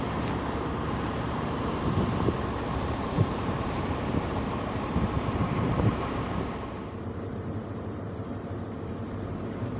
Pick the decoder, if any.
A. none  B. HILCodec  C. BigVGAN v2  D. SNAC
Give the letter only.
C